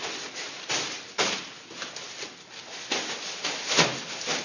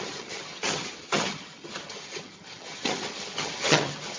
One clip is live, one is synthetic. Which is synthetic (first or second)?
second